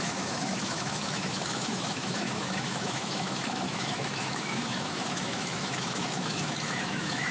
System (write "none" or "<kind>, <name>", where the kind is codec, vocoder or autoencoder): autoencoder, DAC-VAE